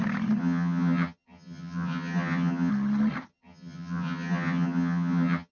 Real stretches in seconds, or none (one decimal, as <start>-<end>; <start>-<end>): 0.0-0.4; 2.7-3.3